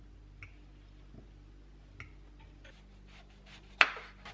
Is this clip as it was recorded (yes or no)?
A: yes